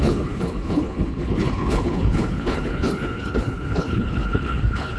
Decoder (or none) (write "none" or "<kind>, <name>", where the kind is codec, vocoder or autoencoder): codec, HILCodec